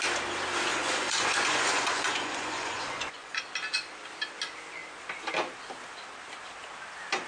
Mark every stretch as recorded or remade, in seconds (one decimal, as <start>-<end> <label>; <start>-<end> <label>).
0.0-0.7 recorded; 0.7-3.4 remade; 3.4-7.3 recorded